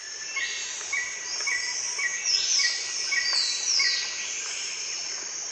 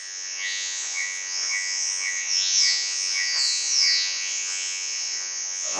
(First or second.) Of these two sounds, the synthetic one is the second